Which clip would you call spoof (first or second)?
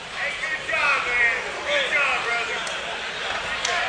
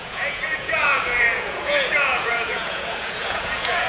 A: second